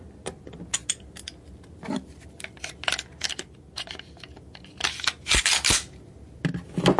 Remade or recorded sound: recorded